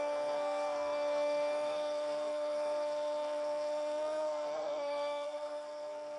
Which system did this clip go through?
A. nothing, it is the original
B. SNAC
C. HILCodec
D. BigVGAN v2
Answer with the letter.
B